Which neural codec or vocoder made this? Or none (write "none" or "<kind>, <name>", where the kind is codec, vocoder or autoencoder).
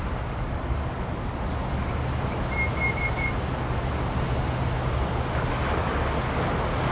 none